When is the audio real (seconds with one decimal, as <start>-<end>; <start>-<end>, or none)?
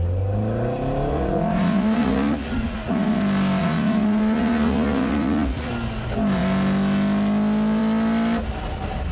0.0-1.1; 3.2-3.6; 5.7-9.1